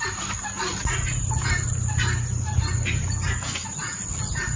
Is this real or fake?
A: real